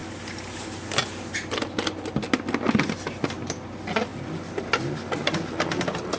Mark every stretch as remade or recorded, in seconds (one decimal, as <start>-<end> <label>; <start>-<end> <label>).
0.0-6.2 recorded